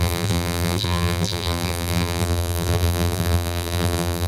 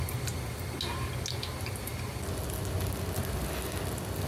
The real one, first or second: second